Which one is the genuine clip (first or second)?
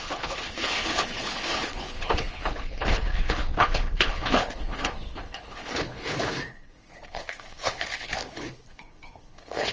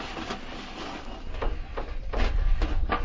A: second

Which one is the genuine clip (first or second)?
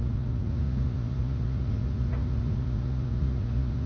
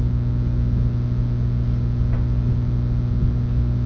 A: second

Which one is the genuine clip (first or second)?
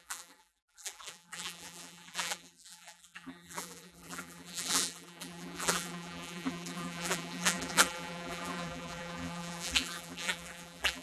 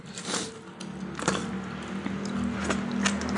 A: second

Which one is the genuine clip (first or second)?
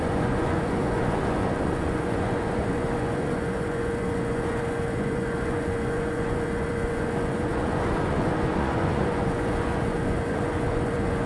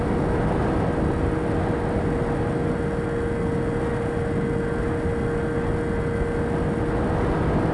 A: second